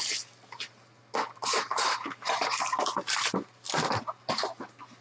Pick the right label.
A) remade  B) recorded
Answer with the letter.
B